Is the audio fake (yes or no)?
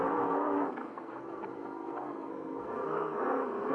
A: yes